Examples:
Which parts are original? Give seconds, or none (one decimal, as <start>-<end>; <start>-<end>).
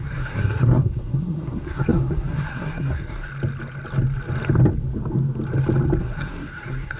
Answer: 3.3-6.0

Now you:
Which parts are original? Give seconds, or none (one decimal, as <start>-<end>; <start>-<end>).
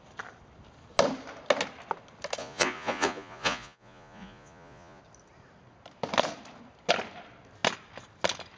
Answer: 0.0-2.4; 5.0-8.6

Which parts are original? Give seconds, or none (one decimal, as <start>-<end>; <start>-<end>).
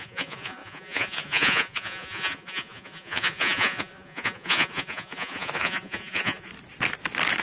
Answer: 6.5-7.4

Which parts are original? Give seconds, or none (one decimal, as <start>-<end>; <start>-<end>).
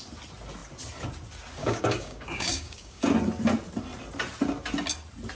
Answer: 0.0-1.6; 3.0-5.4